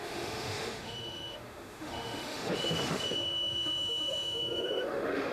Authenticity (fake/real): fake